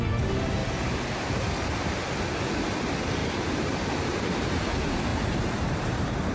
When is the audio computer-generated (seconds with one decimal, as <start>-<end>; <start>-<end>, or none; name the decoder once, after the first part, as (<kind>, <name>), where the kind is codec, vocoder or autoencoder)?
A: 0.6-1.5 (vocoder, BigVGAN v2); 3.2-4.5; 5.1-6.3